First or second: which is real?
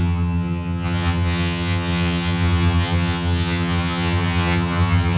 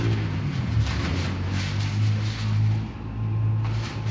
second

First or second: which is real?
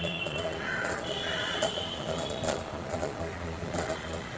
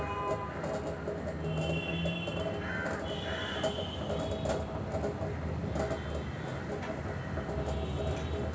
second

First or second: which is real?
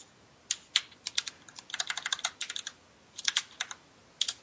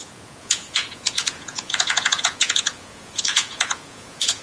first